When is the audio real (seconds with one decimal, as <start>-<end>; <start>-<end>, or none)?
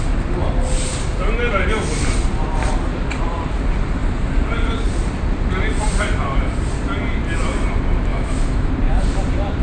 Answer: 0.0-8.1; 8.7-9.6